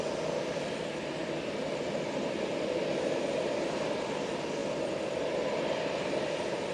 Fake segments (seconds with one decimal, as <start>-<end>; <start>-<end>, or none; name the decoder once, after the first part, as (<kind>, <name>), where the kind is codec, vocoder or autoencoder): none